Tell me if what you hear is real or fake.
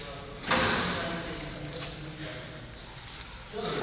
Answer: real